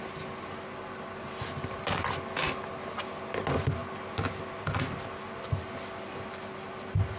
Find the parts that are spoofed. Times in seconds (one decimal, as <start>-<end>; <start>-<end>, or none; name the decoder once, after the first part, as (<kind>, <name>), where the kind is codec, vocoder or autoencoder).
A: none